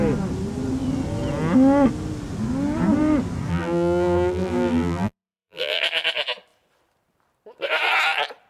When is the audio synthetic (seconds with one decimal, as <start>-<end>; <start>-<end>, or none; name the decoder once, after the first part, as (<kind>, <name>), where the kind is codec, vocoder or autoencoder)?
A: 3.5-5.8 (vocoder, BigVGAN v2)